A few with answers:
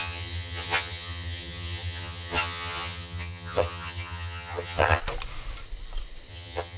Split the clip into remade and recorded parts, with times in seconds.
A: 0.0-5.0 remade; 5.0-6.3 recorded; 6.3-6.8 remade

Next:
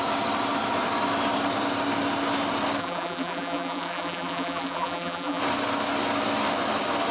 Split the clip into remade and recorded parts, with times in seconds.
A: 0.0-2.8 recorded; 2.8-5.4 remade; 5.4-7.1 recorded